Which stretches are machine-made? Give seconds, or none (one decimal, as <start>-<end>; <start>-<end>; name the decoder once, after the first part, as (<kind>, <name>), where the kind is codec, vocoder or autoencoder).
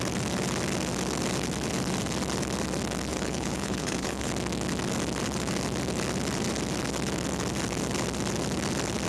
3.1-4.3 (codec, HILCodec)